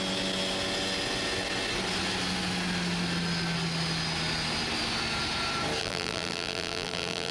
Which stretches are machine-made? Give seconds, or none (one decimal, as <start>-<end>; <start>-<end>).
5.8-7.3